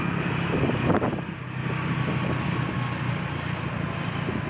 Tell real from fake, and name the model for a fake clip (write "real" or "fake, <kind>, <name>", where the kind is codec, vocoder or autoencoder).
real